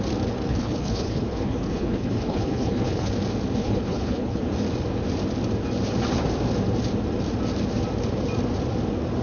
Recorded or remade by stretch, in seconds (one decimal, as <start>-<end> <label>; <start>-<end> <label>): 0.0-0.5 recorded; 0.5-3.1 remade; 3.1-3.6 recorded; 3.6-4.4 remade; 4.4-9.2 recorded